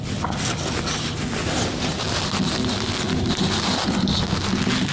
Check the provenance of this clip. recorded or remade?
recorded